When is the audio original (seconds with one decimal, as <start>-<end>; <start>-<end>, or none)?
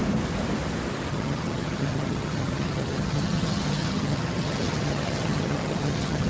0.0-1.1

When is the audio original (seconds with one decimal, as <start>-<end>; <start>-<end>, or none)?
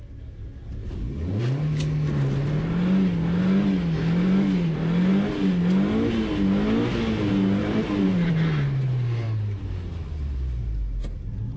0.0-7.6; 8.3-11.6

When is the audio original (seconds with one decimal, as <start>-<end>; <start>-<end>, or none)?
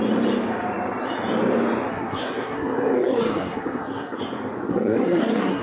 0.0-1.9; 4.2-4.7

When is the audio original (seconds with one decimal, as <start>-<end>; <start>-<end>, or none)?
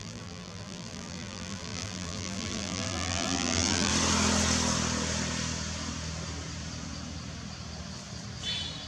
3.9-8.9